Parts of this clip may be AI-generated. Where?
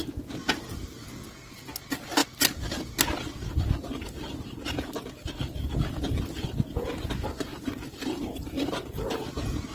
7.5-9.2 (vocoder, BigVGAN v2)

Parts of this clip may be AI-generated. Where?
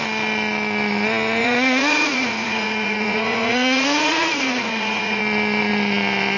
1.4-5.2 (vocoder, Vocos)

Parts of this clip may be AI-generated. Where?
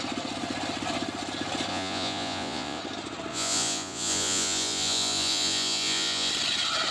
1.7-2.8 (vocoder, Vocos); 3.3-6.3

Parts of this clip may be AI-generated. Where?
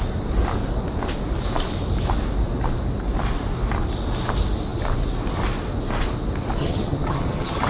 6.6-7.7 (vocoder, HiFi-GAN)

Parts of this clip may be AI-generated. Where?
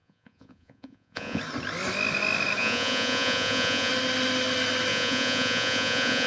0.0-1.4 (vocoder, Vocos); 2.6-3.9; 4.9-6.3